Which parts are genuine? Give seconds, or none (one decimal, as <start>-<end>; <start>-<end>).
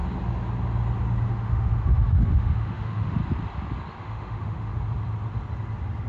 0.0-1.3; 3.2-4.0; 4.7-6.1